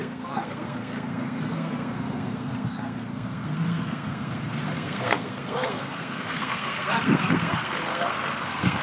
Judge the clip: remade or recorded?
remade